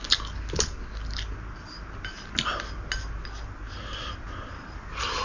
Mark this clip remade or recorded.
recorded